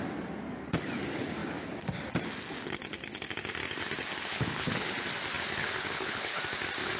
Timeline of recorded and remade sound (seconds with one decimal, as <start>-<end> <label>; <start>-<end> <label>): 0.0-4.1 recorded; 4.1-4.9 remade; 4.9-5.6 recorded; 5.6-6.4 remade; 6.4-7.0 recorded